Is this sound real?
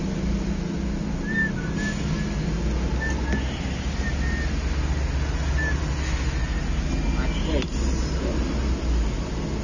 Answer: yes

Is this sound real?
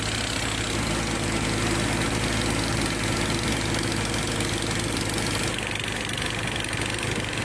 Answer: yes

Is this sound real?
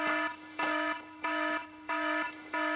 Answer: no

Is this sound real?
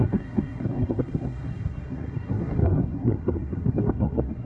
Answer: no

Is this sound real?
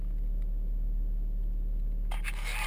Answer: yes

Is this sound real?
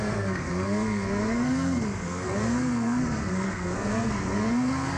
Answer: no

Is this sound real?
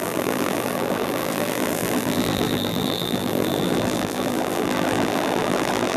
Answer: no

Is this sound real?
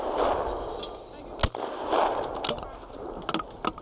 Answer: yes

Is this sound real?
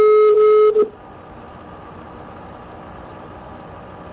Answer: yes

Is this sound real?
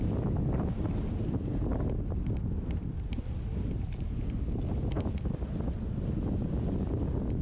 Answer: yes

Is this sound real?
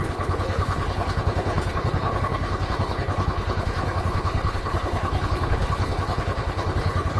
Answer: no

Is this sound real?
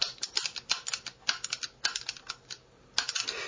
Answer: yes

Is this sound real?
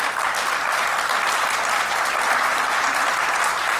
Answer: yes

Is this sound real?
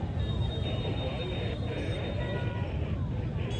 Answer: yes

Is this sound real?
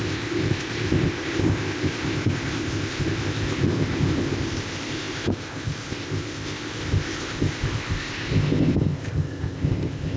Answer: no